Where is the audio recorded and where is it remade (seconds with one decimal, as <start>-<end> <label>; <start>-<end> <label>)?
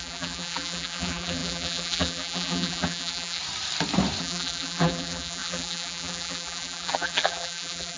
0.0-3.4 remade; 3.4-4.2 recorded; 4.2-8.0 remade